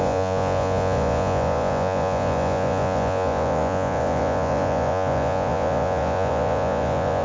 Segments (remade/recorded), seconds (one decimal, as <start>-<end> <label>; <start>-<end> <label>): 0.0-7.2 remade